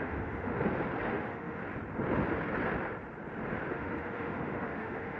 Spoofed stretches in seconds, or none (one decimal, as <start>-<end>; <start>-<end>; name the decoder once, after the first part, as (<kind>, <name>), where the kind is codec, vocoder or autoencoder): 0.0-0.5 (autoencoder, DAC-VAE); 1.1-1.6; 3.7-5.2